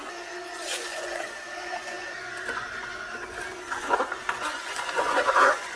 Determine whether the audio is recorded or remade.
remade